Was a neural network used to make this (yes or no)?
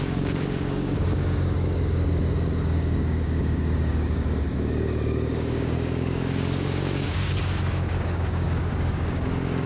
yes